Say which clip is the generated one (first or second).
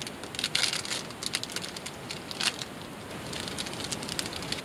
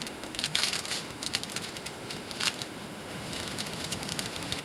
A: second